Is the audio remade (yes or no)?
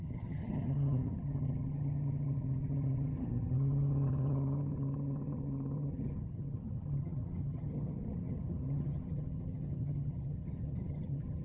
yes